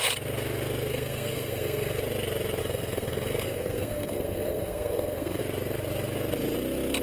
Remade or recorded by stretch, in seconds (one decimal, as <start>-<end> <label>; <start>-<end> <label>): 0.0-0.9 recorded; 0.9-2.0 remade; 2.0-2.6 recorded; 2.6-5.4 remade; 5.4-7.0 recorded